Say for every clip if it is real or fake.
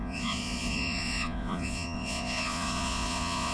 fake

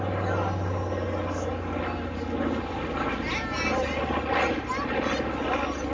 real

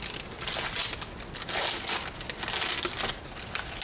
real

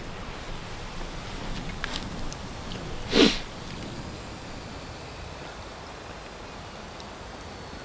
real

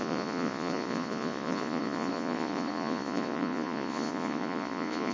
fake